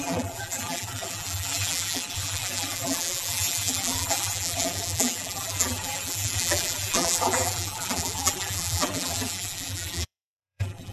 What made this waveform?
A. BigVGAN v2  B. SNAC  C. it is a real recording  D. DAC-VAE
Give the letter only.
A